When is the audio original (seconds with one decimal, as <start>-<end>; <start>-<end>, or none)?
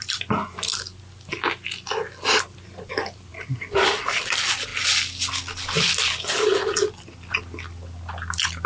0.7-2.4; 4.7-8.7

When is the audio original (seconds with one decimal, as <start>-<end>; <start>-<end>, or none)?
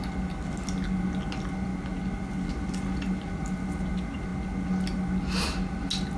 0.0-6.2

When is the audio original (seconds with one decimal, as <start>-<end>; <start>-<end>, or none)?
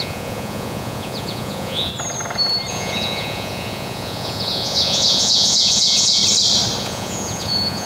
1.9-2.7; 6.2-6.8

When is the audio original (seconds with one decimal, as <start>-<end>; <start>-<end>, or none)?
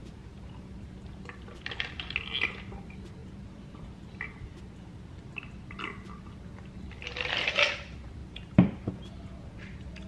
1.2-3.2; 4.6-8.2; 8.9-10.1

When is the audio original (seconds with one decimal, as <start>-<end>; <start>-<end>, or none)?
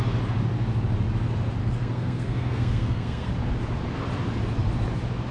0.0-1.6; 3.3-5.3